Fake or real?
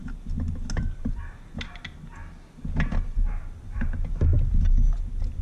real